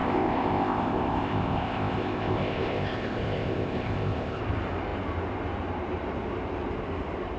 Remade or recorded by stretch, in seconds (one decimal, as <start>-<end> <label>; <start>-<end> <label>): 0.0-4.4 remade; 4.4-7.4 recorded